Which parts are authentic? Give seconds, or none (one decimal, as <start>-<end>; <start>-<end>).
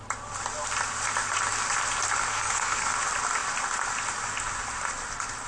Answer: 0.0-2.3; 2.9-5.5